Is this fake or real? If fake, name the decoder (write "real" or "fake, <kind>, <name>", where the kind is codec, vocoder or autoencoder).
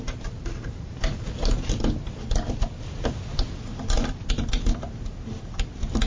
real